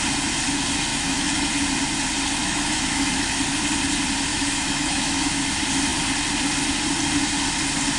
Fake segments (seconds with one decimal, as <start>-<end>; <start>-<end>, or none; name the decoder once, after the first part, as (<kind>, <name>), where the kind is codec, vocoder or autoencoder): 0.9-1.5 (autoencoder, DAC-VAE); 2.4-3.4; 4.3-5.5